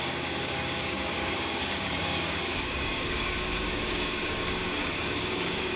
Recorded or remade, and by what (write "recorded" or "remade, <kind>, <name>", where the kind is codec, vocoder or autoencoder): remade, codec, DAC